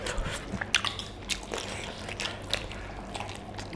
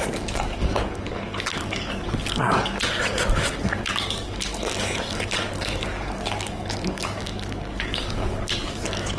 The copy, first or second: second